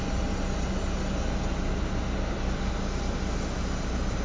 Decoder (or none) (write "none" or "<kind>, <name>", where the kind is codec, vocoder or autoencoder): none